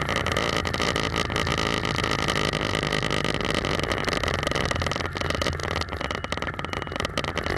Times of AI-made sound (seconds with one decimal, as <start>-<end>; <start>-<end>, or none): none